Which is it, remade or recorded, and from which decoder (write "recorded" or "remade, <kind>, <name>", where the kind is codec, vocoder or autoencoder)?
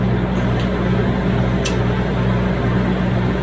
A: recorded